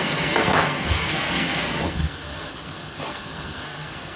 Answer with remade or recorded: remade